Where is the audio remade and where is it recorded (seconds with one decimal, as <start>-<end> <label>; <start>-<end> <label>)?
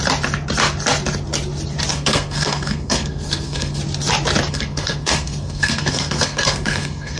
0.0-1.9 recorded; 1.9-3.8 remade; 3.8-4.5 recorded; 4.5-7.2 remade